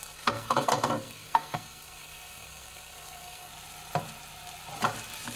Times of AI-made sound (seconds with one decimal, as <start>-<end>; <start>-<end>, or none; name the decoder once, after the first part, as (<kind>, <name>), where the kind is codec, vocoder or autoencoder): 0.0-3.5 (codec, SNAC)